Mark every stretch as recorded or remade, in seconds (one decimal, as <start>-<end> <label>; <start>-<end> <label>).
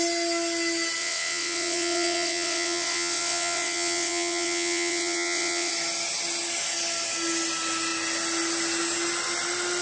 0.0-1.0 recorded; 1.0-5.7 remade; 5.7-9.8 recorded